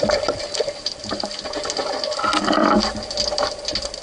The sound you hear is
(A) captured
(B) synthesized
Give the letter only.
A